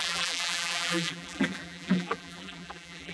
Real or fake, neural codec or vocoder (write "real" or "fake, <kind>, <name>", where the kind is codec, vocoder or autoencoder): fake, vocoder, BigVGAN v2